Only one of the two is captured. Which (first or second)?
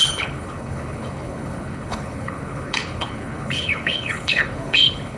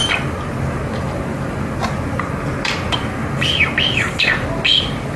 second